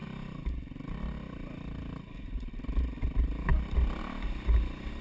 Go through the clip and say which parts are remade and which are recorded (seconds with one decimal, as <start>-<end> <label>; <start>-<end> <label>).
0.0-5.0 recorded